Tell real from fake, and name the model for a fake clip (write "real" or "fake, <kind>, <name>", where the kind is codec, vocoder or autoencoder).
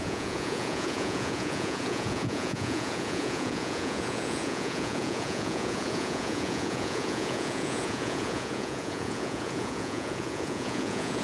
fake, vocoder, Vocos